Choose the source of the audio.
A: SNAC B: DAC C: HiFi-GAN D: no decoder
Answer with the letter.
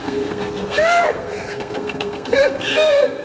A